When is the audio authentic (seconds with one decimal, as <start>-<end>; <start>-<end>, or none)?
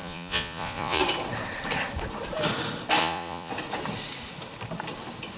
1.0-3.0; 3.5-5.4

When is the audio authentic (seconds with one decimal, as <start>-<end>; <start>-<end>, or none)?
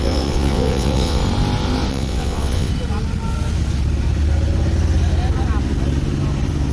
1.2-1.9; 2.7-6.7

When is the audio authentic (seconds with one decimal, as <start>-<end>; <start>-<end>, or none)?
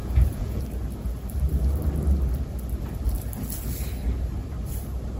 0.6-5.2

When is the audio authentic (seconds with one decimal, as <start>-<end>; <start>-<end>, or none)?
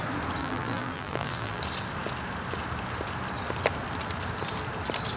0.0-0.4; 1.6-5.2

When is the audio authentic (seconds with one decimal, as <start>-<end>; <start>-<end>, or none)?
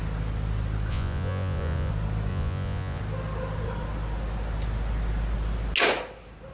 0.0-0.9; 1.9-2.3; 3.0-6.5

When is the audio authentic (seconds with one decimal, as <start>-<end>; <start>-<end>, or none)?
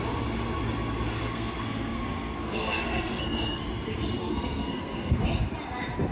0.0-1.2; 3.6-4.2; 5.2-6.1